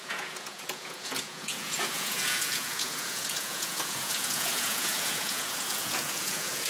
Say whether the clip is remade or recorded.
remade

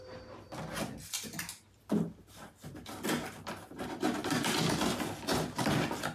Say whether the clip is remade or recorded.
recorded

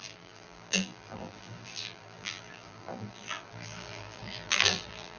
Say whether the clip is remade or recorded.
remade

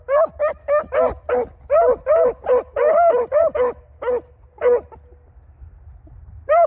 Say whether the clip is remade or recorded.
recorded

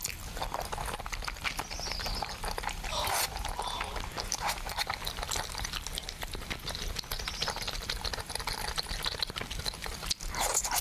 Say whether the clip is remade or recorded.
recorded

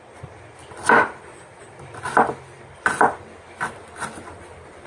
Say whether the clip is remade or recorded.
remade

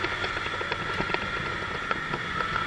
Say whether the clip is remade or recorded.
remade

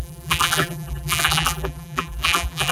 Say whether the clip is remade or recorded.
remade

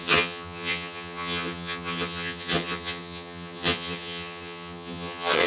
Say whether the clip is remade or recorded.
remade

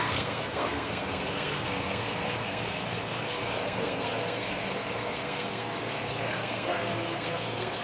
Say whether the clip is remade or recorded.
remade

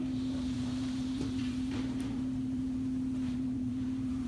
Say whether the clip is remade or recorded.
remade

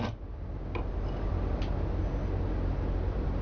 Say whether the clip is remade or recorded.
recorded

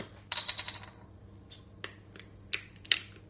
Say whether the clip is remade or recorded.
recorded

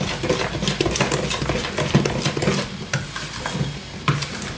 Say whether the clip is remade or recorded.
recorded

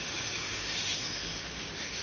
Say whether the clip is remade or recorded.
remade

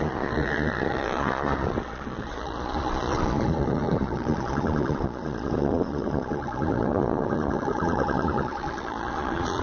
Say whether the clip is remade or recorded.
remade